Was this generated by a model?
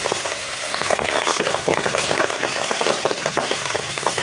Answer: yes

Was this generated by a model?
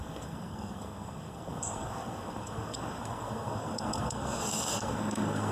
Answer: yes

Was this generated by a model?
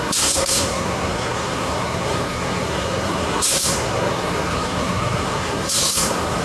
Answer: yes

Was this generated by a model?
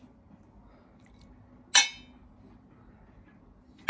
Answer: no